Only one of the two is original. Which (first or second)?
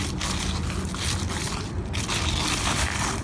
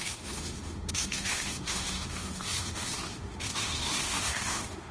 first